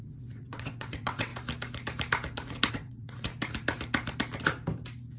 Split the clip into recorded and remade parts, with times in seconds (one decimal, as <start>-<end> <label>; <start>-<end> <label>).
0.0-1.3 remade; 1.3-2.7 recorded; 2.7-3.3 remade; 3.3-5.2 recorded